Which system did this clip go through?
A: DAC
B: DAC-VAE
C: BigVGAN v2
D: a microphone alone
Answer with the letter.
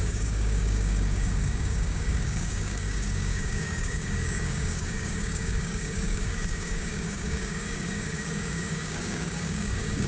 A